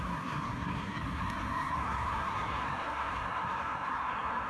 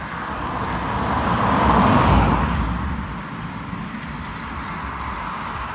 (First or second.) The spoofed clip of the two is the first